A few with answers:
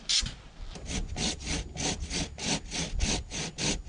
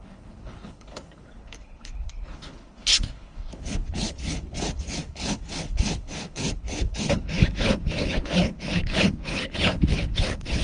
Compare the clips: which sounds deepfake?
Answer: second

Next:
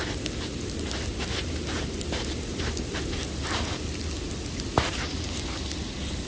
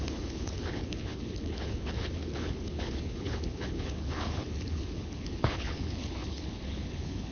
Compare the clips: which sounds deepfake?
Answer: second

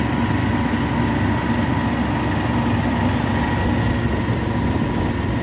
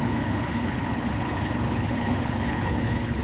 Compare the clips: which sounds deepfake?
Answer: second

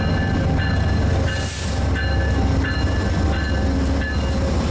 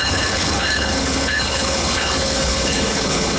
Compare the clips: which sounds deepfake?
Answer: second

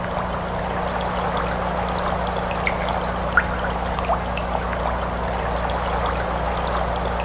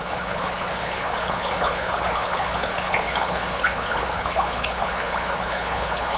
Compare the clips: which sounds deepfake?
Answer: second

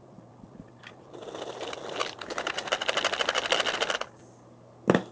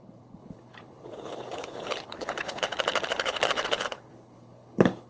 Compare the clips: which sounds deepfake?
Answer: second